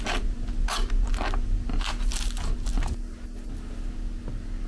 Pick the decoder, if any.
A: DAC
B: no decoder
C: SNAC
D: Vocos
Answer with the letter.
B